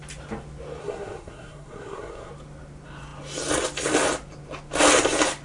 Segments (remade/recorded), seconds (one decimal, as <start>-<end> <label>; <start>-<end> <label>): 0.0-0.8 recorded; 0.8-2.3 remade; 2.3-5.4 recorded